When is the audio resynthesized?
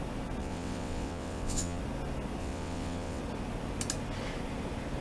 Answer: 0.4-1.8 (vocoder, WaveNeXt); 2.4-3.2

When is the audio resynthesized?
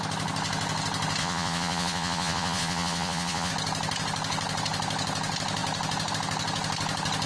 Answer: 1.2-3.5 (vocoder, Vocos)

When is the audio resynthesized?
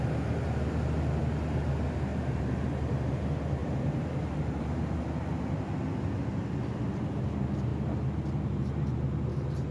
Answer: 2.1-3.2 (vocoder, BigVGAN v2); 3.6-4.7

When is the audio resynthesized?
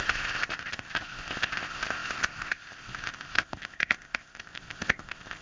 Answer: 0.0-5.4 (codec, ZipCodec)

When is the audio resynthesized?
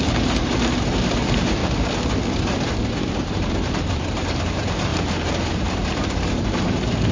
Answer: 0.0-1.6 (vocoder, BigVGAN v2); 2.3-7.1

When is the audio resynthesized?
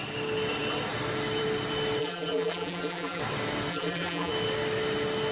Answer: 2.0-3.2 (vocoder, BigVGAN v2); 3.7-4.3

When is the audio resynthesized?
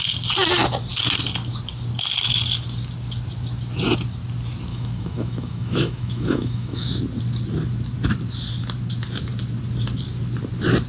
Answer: 4.7-6.9 (autoencoder, DAC-VAE)